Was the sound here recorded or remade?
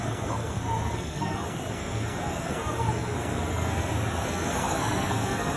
remade